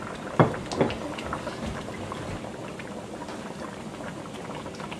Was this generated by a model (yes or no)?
no